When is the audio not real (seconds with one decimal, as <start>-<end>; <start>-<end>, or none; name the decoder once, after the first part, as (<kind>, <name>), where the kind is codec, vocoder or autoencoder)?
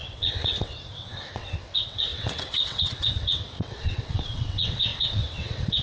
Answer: 0.0-5.8 (vocoder, WaveNeXt)